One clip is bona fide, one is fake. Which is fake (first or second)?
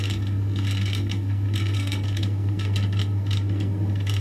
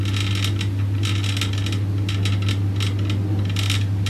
first